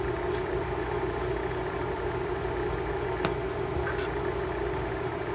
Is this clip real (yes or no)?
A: yes